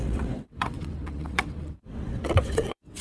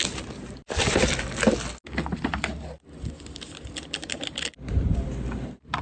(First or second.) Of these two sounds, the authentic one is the second